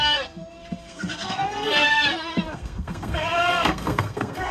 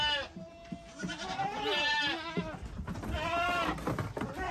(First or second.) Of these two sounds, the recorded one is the second